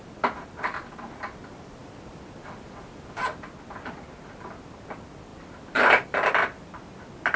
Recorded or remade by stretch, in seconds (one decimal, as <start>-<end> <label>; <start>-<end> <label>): 0.0-1.8 recorded; 1.8-3.2 remade; 3.2-5.3 recorded; 5.3-7.0 remade; 7.0-7.4 recorded